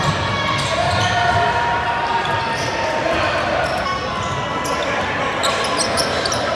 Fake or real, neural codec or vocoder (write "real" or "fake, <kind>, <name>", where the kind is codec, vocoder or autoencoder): real